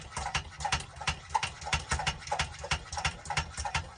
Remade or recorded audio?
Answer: remade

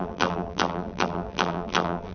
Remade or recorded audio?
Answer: remade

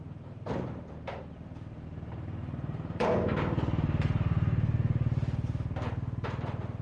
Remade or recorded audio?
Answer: remade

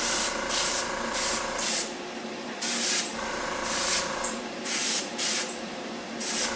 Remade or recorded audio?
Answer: remade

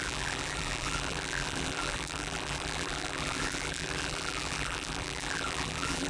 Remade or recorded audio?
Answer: remade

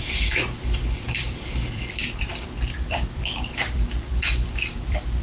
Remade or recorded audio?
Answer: remade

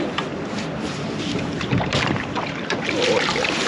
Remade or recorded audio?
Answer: remade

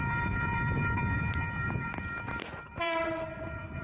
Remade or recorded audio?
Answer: remade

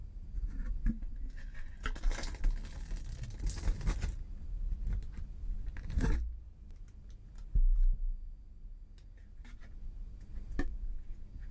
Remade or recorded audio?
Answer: recorded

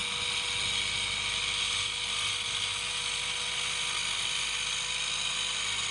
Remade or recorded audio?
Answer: recorded